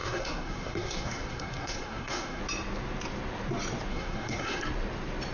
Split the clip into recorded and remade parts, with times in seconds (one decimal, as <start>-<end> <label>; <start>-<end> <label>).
0.0-2.4 remade; 2.4-3.9 recorded; 3.9-4.6 remade; 4.6-5.3 recorded